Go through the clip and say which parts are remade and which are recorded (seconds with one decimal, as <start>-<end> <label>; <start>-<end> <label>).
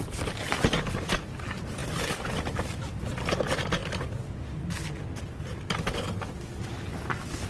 0.0-7.5 recorded